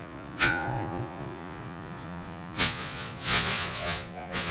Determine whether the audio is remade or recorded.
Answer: remade